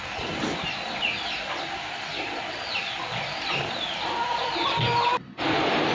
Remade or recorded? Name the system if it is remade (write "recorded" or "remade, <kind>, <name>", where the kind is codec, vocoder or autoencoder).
recorded